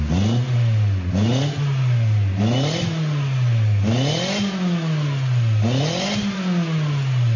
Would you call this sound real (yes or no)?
yes